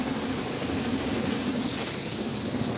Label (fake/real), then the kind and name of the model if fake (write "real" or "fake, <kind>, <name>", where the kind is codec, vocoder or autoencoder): fake, codec, DAC